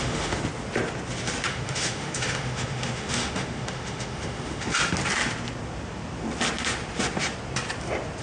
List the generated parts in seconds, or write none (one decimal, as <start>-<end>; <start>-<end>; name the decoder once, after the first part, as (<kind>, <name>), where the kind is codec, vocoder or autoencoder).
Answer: 0.0-0.4 (autoencoder, DAC-VAE); 1.5-4.7

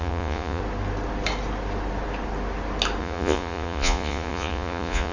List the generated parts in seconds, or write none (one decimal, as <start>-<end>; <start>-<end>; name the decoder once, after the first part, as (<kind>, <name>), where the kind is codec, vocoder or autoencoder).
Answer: 0.0-0.6 (vocoder, Vocos); 3.0-5.1